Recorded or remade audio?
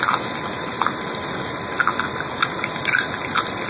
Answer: recorded